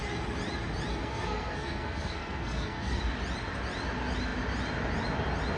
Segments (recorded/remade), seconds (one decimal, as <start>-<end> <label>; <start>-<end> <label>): 0.0-0.9 recorded; 0.9-3.0 remade; 3.0-5.6 recorded